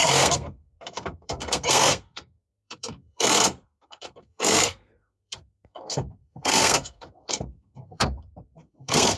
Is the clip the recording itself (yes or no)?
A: no